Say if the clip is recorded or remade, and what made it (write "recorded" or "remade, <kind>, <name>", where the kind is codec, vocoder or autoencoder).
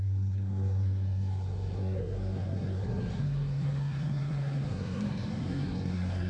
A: remade, codec, SNAC